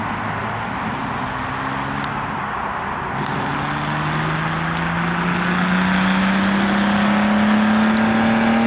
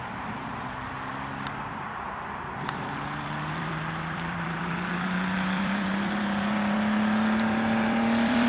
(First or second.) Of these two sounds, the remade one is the second